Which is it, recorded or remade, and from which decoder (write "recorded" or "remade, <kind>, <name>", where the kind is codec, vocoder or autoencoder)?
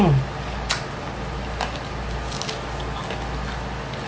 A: recorded